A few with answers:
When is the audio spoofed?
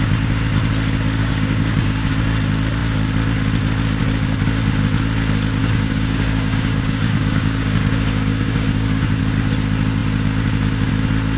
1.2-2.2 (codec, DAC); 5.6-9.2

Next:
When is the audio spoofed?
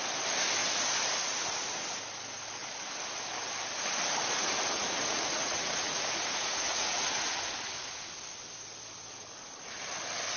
4.3-8.1 (vocoder, Vocos)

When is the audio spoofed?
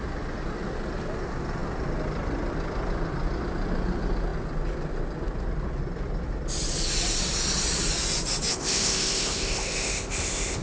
8.5-10.6 (codec, ZipCodec)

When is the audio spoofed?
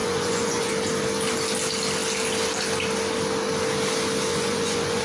0.0-0.7 (vocoder, Vocos); 4.3-5.0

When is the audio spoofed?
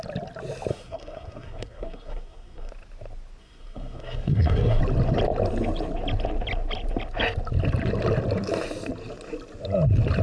0.7-2.7 (codec, SNAC); 3.4-4.8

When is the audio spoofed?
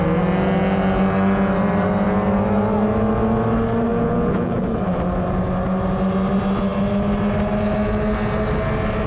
3.9-4.8 (vocoder, Vocos)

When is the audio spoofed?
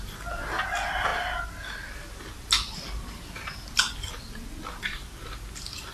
none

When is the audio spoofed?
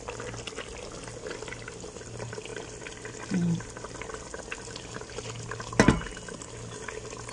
none